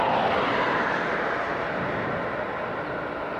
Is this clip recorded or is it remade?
recorded